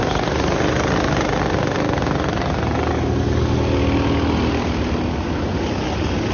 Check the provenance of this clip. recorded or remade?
recorded